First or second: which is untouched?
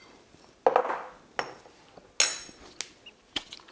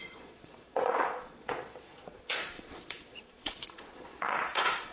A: first